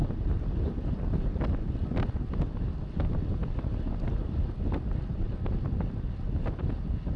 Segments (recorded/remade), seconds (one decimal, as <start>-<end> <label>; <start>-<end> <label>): 0.0-1.0 remade; 1.0-7.2 recorded